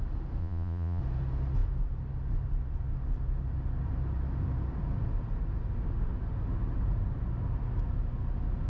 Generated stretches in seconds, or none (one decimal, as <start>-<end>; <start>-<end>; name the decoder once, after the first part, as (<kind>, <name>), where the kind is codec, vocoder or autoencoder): 0.4-1.0 (vocoder, Vocos)